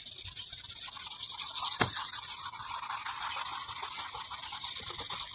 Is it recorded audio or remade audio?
recorded